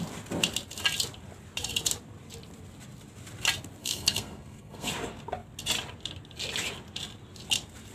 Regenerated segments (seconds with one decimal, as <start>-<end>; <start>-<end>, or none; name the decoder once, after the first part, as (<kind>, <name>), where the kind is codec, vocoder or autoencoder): 3.8-4.9 (codec, SNAC)